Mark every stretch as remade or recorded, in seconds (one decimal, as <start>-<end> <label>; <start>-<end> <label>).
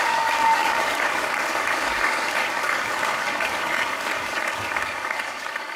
0.0-5.8 remade